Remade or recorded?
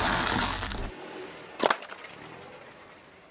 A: recorded